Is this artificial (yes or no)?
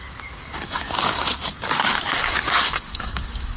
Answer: yes